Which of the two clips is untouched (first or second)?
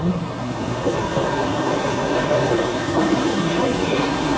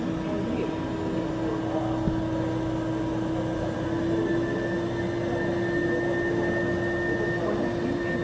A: second